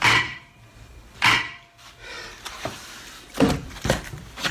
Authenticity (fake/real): fake